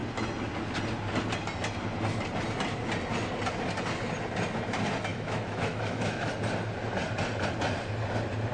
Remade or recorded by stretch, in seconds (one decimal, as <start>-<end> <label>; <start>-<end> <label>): 0.0-5.1 recorded; 5.1-6.3 remade; 6.3-8.5 recorded